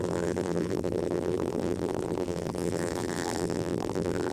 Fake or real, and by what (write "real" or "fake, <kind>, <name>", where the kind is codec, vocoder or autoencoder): fake, vocoder, BigVGAN v2